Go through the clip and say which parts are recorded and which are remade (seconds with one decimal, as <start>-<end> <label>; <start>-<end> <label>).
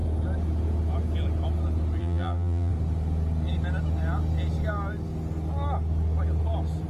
0.0-2.0 recorded; 2.0-2.7 remade; 2.7-6.9 recorded